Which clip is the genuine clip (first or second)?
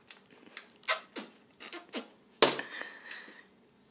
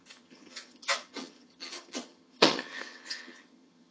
first